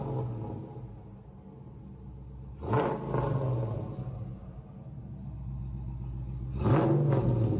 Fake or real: real